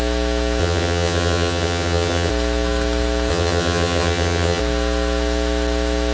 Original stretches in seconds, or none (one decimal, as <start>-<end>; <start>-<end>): 0.0-0.6; 2.3-3.3; 4.6-6.1